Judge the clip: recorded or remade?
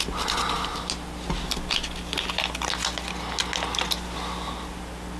recorded